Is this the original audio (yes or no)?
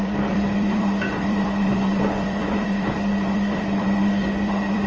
no